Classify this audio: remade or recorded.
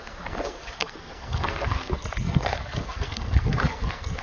remade